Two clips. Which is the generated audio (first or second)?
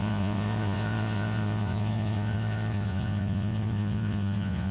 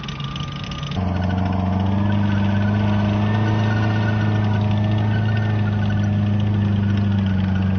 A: first